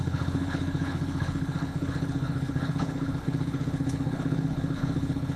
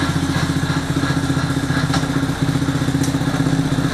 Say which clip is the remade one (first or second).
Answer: first